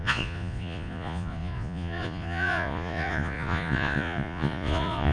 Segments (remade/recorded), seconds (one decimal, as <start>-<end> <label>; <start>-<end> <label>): 0.0-5.1 remade